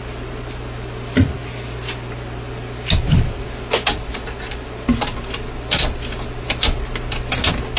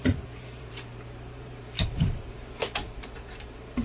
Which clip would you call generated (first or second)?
second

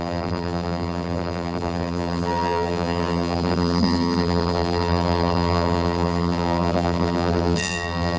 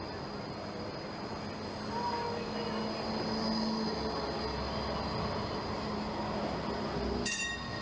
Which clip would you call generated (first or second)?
first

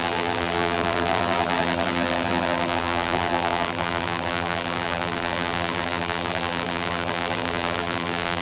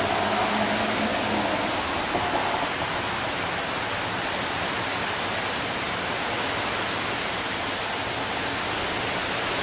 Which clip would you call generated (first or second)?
first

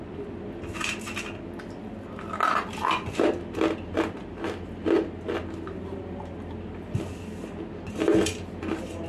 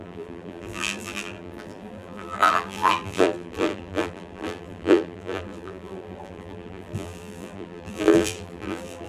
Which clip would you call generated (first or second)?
second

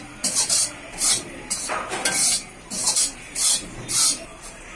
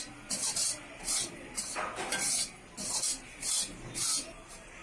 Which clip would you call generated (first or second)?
first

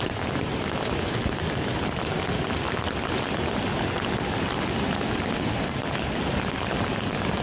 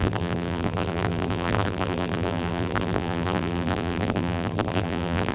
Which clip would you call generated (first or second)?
second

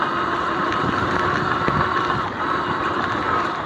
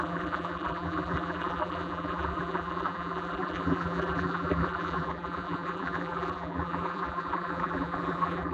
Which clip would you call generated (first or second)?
second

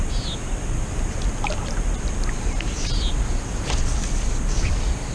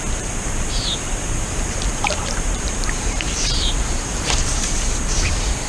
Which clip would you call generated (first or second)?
second